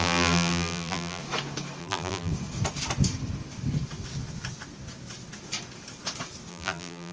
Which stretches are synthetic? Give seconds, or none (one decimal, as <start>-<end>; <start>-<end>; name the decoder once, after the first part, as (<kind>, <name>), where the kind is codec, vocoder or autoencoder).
0.0-1.2 (vocoder, BigVGAN v2); 1.8-2.3; 6.5-7.1

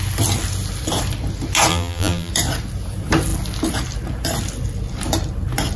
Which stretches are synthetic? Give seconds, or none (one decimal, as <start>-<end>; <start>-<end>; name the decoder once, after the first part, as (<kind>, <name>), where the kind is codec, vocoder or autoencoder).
1.7-2.3 (vocoder, BigVGAN v2)

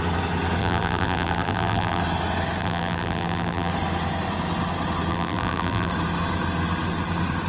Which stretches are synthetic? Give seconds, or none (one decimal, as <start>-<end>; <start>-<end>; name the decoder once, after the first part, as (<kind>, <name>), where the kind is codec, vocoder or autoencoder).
0.6-2.0 (vocoder, BigVGAN v2); 2.6-3.7; 5.1-5.9

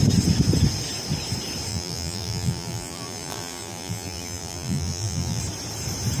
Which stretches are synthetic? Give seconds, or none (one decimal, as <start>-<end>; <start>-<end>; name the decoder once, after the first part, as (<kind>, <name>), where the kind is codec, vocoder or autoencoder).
1.7-5.4 (vocoder, BigVGAN v2)

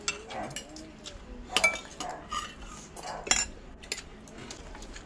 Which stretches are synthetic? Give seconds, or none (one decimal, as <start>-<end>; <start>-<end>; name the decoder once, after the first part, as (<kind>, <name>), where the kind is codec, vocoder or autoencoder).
none

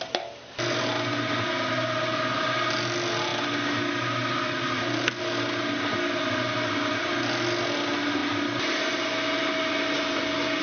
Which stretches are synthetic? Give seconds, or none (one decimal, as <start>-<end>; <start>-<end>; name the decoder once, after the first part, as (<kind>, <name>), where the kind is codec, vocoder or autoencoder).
none